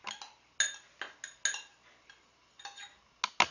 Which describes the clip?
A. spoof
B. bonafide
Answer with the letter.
B